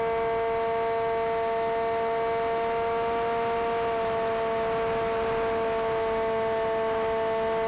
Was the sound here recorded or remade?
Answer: recorded